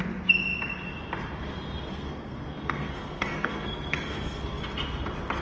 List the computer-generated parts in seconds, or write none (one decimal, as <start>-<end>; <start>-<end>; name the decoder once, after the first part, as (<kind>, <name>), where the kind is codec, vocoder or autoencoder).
1.9-4.6 (codec, SNAC)